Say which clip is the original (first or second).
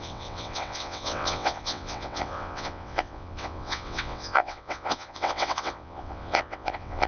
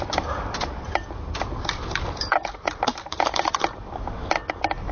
second